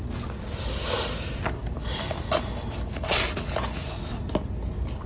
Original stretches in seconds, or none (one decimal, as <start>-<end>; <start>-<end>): 0.0-5.1